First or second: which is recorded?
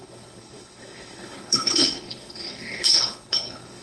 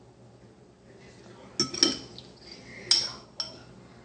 second